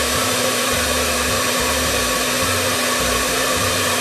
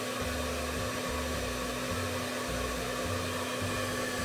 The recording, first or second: second